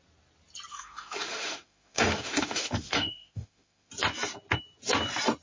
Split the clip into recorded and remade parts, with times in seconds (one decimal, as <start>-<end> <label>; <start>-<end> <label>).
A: 0.0-0.7 recorded; 0.7-3.9 remade; 3.9-5.4 recorded